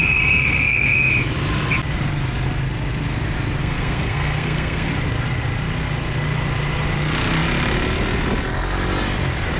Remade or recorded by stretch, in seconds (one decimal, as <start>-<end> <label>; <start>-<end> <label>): 0.0-1.1 remade; 1.1-3.6 recorded; 3.6-4.9 remade; 4.9-9.6 recorded